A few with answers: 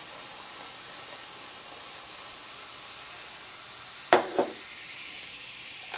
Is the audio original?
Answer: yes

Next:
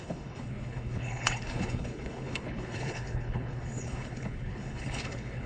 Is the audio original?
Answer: no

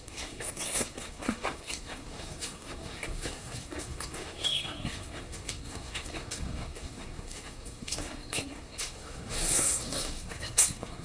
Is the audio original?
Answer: no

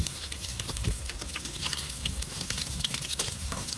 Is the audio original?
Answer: no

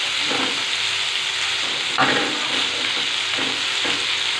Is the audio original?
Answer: yes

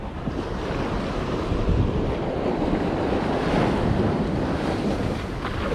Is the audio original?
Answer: yes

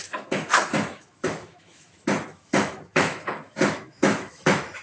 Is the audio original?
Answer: no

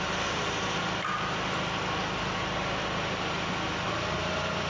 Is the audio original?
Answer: yes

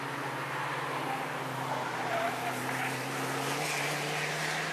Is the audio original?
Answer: yes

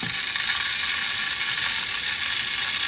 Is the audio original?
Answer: yes